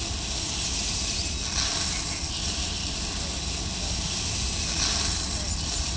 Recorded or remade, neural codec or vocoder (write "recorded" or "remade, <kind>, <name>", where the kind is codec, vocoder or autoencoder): recorded